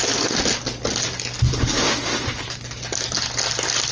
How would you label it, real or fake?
real